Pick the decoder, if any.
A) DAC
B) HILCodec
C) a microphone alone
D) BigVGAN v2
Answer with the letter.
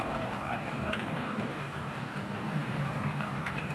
A